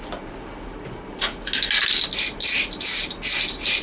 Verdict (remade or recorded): recorded